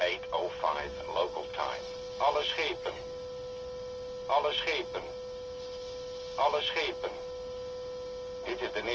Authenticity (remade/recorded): recorded